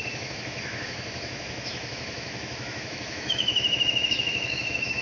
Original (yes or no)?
no